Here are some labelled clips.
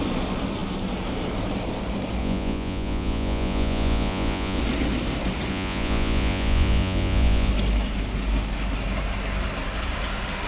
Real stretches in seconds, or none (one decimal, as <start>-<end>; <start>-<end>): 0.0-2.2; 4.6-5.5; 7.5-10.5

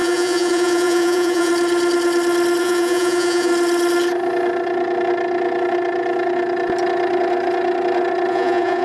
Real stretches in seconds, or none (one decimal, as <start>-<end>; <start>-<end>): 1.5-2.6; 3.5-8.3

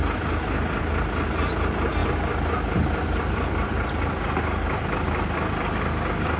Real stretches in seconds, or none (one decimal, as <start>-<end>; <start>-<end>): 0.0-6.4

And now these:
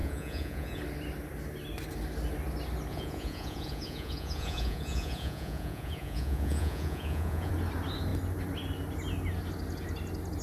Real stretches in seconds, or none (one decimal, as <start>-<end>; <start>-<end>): 0.8-2.9; 7.5-10.4